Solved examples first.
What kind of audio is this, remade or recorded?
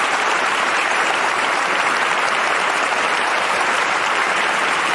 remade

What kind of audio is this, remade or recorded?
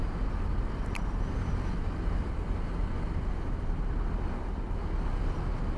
recorded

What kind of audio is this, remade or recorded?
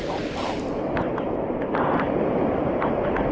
recorded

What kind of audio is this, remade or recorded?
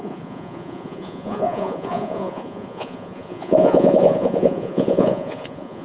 remade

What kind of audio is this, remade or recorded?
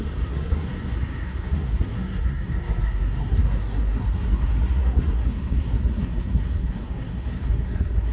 remade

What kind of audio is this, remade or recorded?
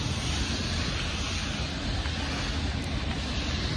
recorded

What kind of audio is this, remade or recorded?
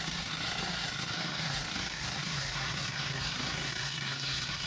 remade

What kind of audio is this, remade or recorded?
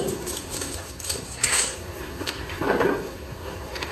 remade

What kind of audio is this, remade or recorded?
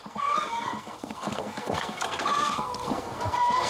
remade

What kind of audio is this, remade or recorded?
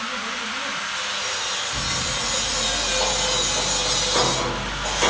recorded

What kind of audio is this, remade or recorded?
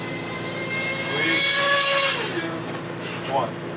recorded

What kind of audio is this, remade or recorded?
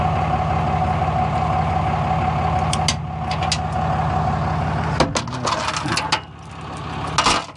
recorded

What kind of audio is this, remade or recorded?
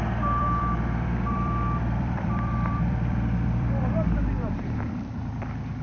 remade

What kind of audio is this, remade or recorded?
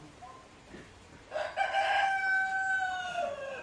recorded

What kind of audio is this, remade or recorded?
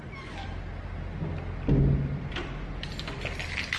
recorded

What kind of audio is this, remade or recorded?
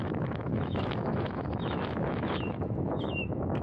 remade